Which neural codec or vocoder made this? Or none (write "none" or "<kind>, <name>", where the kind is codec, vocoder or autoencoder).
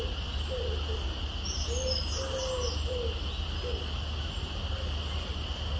none